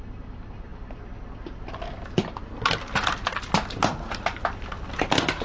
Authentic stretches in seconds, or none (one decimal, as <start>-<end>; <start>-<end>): 0.0-5.4